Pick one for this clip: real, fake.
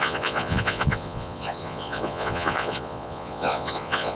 fake